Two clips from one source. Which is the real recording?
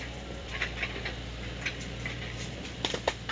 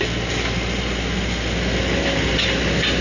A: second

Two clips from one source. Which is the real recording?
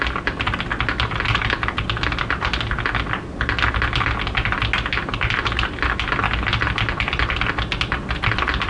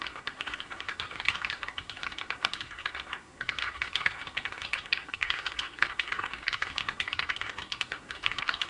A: first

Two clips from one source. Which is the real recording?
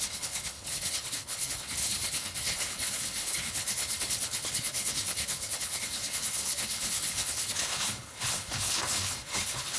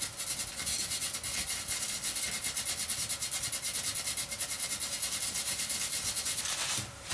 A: second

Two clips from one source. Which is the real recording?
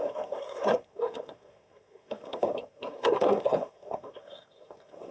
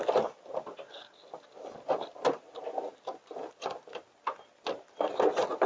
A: second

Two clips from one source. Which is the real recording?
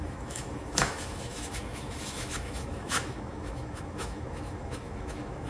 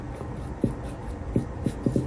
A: second